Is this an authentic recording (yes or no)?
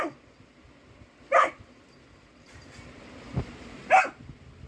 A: yes